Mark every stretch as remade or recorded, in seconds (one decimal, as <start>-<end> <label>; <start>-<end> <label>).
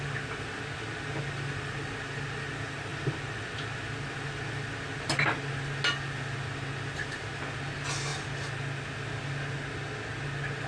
0.0-10.7 recorded